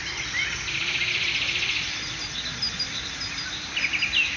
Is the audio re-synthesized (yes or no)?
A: no